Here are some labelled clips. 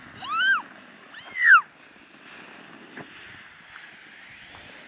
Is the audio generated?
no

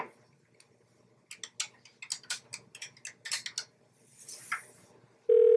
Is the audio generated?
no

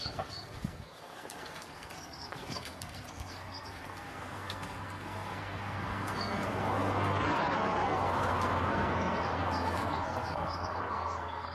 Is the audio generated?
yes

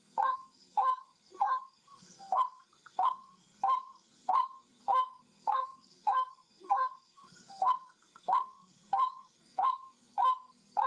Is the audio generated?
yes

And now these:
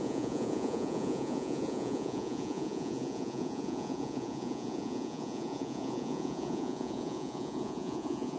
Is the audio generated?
yes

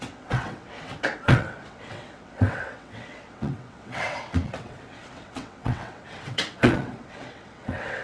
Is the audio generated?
yes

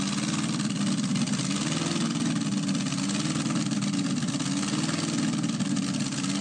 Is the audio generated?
no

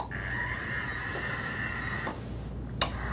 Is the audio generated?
no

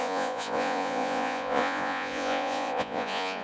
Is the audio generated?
yes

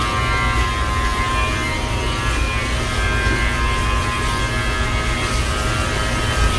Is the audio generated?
no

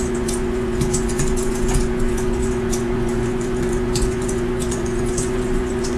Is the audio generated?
yes